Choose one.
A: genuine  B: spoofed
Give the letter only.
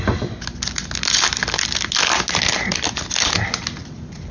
A